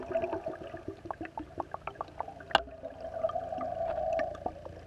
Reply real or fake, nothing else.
real